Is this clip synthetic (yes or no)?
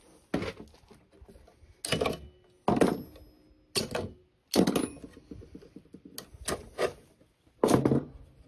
no